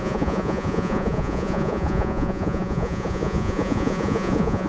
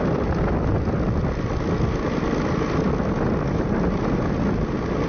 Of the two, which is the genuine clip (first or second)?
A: second